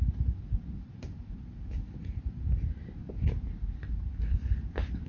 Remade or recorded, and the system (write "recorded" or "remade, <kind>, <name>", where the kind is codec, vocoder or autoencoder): recorded